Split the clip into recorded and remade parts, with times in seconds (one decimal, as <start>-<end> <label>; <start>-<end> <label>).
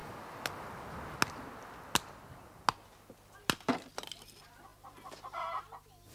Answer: 0.0-6.1 recorded